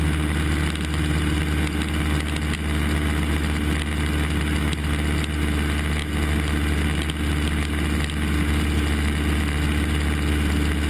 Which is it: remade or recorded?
recorded